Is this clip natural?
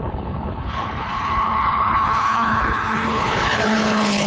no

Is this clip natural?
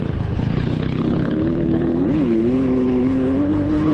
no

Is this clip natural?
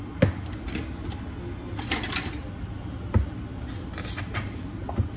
yes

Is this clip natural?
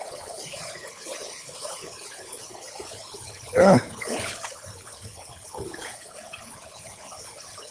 no